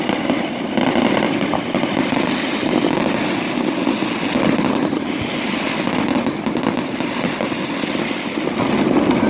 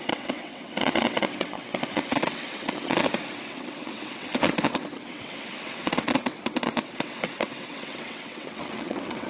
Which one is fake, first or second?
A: second